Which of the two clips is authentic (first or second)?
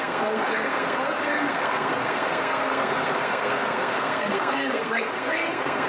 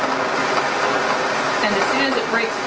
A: second